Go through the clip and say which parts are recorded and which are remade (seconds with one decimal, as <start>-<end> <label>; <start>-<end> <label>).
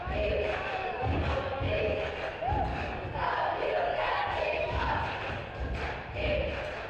0.0-0.8 recorded; 0.8-2.1 remade; 2.1-2.7 recorded; 2.7-5.0 remade; 5.0-6.9 recorded